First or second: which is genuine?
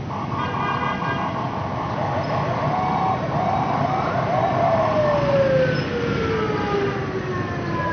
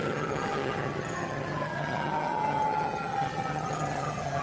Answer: first